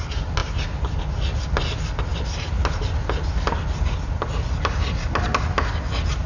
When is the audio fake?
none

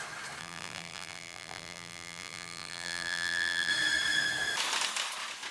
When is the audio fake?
0.4-3.7 (vocoder, BigVGAN v2)

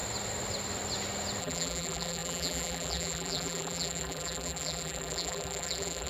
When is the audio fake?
1.4-6.1 (vocoder, BigVGAN v2)

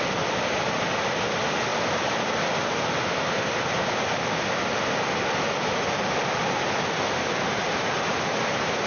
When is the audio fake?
1.7-2.4 (vocoder, BigVGAN v2)

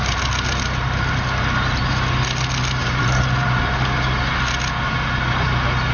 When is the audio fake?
2.8-3.6 (vocoder, BigVGAN v2)

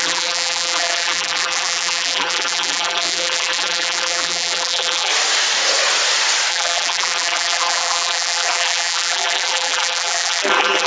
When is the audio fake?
0.0-5.1 (vocoder, BigVGAN v2); 6.5-10.9